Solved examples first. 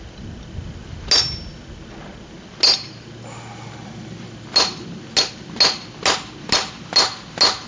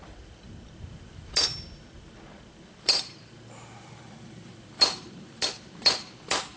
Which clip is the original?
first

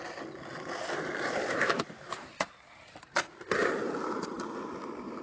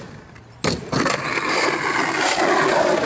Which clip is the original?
second